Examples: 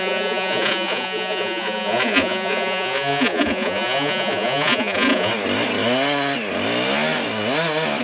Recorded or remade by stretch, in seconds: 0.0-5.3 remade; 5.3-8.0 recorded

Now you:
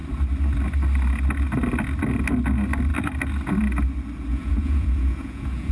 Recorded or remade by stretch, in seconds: 0.0-4.3 recorded; 4.3-5.7 remade